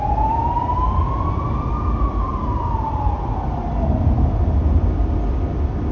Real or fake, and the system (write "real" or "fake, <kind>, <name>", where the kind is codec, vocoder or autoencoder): real